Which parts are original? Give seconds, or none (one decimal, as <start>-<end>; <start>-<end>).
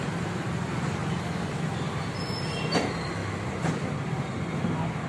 0.0-5.1